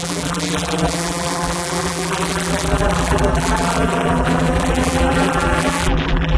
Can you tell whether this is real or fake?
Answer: fake